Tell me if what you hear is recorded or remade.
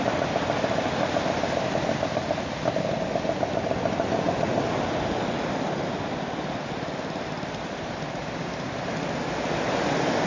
recorded